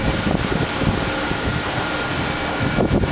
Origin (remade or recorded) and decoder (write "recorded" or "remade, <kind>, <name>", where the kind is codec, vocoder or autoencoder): recorded